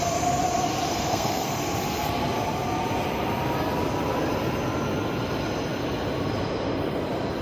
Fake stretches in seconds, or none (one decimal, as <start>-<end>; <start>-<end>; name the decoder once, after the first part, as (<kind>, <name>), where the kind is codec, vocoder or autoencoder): 0.9-1.6 (codec, SNAC)